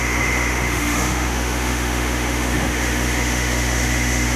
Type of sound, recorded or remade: remade